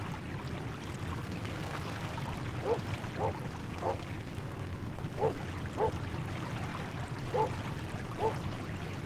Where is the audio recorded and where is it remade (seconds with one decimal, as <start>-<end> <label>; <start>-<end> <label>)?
0.0-1.1 recorded; 1.1-2.1 remade; 2.1-3.6 recorded; 3.6-5.4 remade; 5.4-9.1 recorded